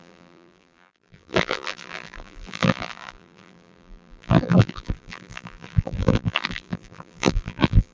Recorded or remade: remade